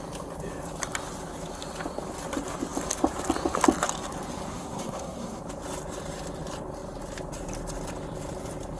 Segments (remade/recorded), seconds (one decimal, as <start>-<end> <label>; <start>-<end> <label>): 0.0-4.5 recorded; 4.5-5.4 remade; 5.4-8.8 recorded